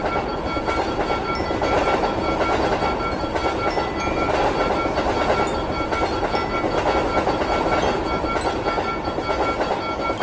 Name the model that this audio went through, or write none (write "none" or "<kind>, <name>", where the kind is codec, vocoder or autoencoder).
none